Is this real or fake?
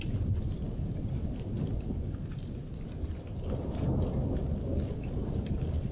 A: real